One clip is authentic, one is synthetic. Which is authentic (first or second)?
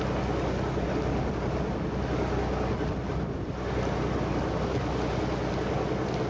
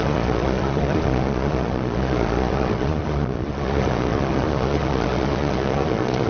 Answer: first